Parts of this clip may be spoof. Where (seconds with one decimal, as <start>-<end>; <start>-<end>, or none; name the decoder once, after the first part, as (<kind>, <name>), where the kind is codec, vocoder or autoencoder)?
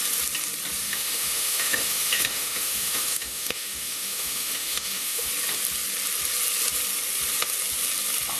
0.8-5.3 (autoencoder, DAC-VAE)